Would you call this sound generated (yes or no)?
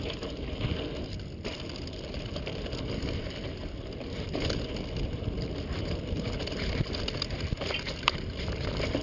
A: no